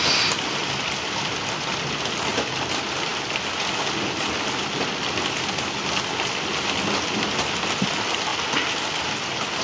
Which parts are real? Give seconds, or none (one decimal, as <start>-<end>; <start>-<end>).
0.0-9.6